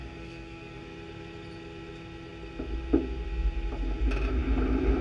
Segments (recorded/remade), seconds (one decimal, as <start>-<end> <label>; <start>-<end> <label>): 0.0-0.8 remade; 0.8-5.0 recorded